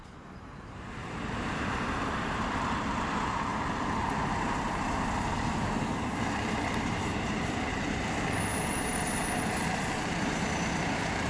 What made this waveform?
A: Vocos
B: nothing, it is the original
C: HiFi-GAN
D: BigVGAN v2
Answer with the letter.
D